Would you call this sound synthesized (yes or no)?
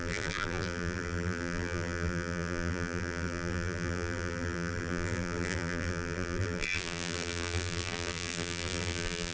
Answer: yes